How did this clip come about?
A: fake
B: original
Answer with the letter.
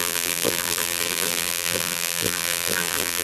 A